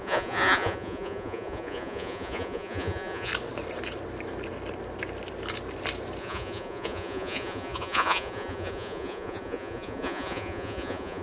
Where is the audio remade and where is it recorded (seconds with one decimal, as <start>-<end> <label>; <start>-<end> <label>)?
0.0-3.3 remade; 3.3-6.2 recorded; 6.2-11.2 remade